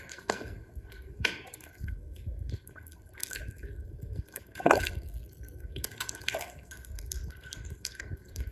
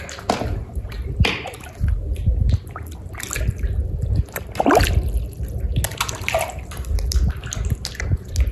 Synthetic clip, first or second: first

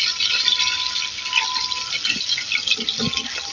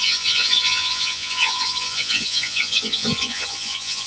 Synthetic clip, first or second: second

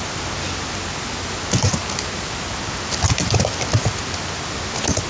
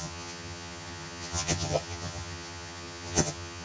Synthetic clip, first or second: second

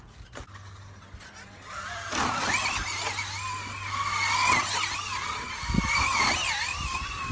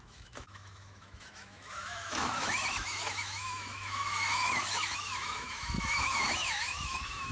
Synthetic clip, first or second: second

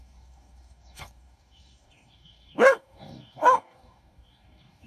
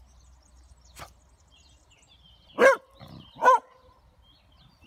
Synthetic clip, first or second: first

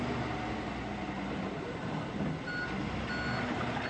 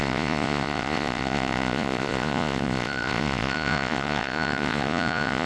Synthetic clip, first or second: second